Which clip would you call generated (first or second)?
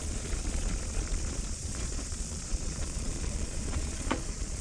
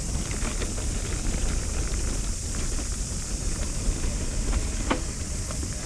first